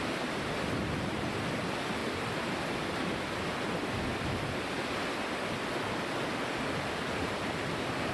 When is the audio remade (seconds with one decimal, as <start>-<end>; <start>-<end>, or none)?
none